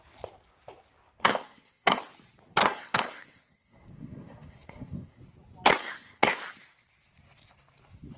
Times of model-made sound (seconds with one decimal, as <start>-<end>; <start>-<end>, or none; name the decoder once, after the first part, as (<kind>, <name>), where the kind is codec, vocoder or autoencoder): 1.2-2.0 (codec, SNAC); 2.6-5.2; 5.8-6.4